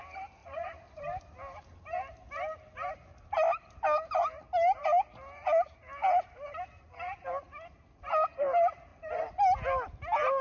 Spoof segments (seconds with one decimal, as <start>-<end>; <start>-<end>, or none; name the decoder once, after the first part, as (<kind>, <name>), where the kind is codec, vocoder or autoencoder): 0.4-1.2 (vocoder, BigVGAN v2); 6.0-6.7